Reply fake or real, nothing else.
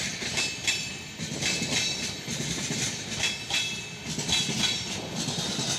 real